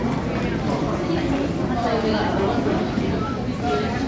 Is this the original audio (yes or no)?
yes